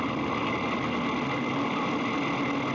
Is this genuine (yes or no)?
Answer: yes